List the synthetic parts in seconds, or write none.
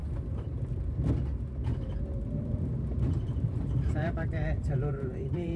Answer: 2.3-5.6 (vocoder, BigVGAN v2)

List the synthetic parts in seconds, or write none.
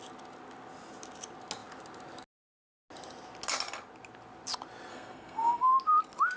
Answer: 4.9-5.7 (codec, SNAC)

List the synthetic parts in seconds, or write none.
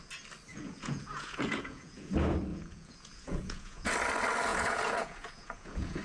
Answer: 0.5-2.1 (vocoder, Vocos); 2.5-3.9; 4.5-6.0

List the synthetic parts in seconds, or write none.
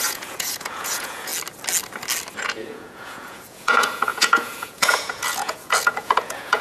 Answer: 0.0-1.3 (vocoder, Vocos); 2.4-6.6